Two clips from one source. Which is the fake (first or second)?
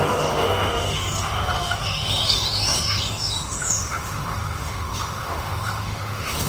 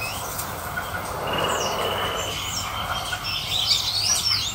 first